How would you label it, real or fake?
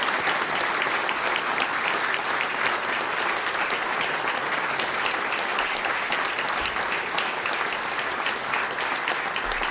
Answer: real